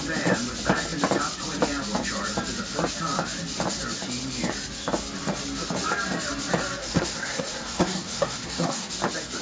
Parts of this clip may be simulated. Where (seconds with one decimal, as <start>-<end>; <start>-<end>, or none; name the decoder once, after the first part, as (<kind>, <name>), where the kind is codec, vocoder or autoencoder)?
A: 6.8-8.9 (codec, SNAC)